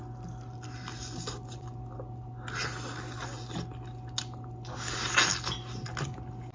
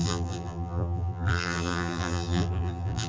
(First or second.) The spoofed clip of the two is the second